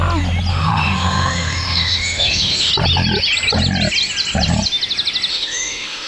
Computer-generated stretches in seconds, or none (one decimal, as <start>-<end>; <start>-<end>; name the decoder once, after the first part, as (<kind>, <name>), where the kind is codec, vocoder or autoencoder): 0.5-2.7 (autoencoder, DAC-VAE); 5.3-6.1